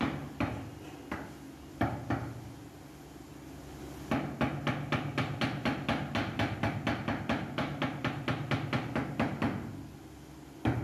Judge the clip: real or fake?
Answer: real